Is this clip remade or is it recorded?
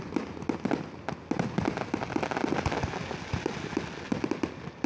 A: recorded